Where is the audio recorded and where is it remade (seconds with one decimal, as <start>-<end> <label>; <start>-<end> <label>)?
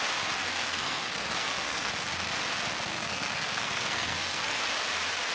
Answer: 0.0-0.5 recorded; 0.5-1.9 remade; 1.9-2.9 recorded; 2.9-4.6 remade; 4.6-5.3 recorded